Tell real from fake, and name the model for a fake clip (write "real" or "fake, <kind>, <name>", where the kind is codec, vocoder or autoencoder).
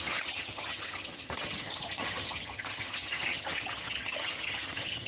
fake, vocoder, HiFi-GAN